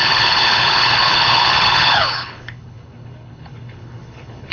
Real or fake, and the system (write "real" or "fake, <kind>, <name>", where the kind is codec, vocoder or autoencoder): fake, codec, HILCodec